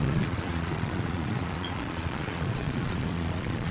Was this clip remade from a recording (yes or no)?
yes